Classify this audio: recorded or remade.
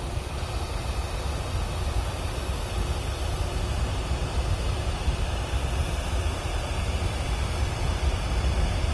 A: recorded